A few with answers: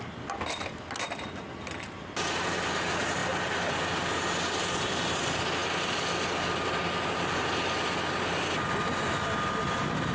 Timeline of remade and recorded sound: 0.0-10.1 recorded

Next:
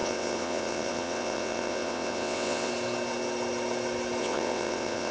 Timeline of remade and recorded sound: 0.0-2.7 remade; 2.7-4.2 recorded; 4.2-5.1 remade